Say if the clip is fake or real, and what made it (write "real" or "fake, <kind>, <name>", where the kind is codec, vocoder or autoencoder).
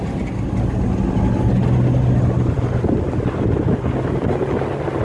real